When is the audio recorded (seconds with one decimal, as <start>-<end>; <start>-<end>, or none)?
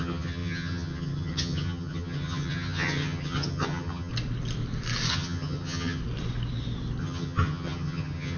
4.1-5.1; 6.0-7.0